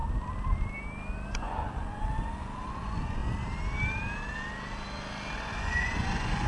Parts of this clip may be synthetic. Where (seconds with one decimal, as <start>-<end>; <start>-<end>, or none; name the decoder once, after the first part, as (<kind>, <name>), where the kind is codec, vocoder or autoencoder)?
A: 1.3-3.2 (vocoder, Vocos); 5.3-6.5